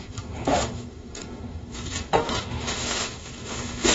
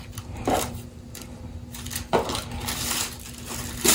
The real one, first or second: second